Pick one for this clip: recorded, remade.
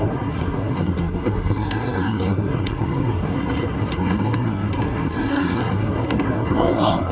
remade